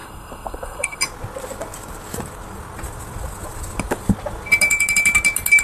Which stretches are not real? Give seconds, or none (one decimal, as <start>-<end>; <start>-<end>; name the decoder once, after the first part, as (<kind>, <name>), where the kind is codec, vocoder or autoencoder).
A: 0.0-1.0 (codec, SNAC)